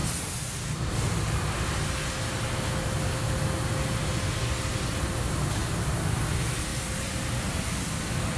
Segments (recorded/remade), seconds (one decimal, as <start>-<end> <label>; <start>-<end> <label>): 0.0-6.7 recorded; 6.7-7.6 remade; 7.6-8.4 recorded